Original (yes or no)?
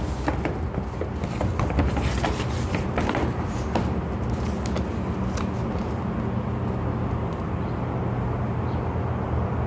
yes